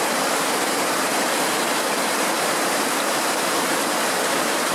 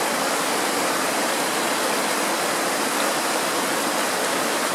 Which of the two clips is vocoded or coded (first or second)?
first